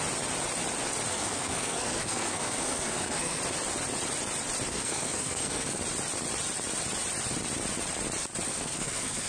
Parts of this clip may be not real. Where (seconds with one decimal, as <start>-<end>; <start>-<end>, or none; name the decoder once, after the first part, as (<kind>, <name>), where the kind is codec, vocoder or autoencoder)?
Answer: 1.1-3.4 (codec, SNAC); 4.7-5.8; 8.5-9.3